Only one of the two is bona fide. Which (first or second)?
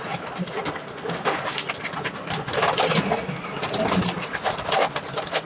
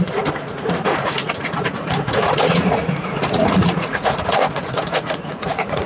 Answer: first